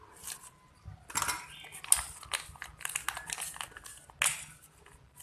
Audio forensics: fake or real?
real